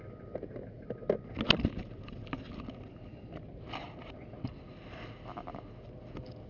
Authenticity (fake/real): real